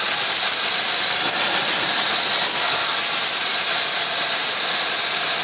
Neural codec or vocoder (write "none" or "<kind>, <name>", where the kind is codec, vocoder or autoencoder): none